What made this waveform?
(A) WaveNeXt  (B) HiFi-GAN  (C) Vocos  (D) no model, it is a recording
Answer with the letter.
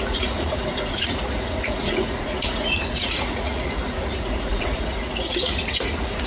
C